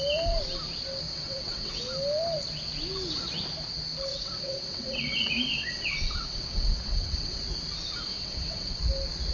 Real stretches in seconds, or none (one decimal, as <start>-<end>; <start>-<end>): 0.0-1.1; 1.8-4.1; 7.4-8.1; 8.8-9.3